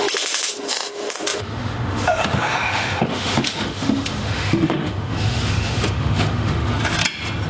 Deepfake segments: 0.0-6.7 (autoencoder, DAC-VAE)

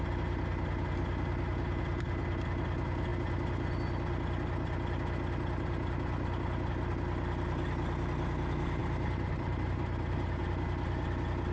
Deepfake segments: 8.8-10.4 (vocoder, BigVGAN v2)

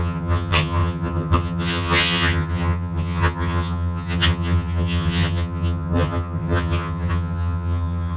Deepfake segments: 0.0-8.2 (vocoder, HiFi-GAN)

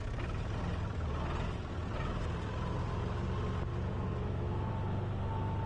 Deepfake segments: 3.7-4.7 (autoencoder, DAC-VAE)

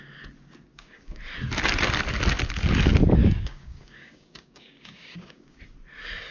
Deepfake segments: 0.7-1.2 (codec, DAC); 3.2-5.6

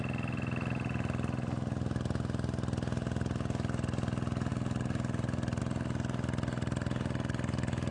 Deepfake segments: none